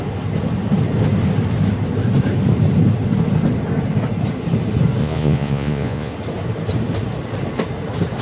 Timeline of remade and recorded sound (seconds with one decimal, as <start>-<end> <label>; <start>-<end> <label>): 0.0-5.0 recorded; 5.0-6.1 remade; 6.1-8.2 recorded